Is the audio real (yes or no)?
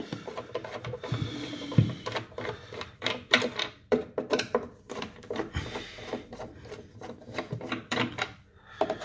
no